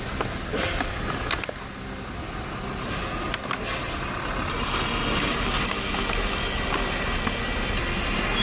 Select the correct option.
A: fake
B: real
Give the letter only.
B